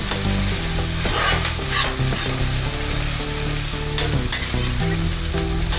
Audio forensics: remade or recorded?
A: recorded